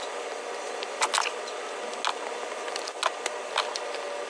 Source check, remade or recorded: recorded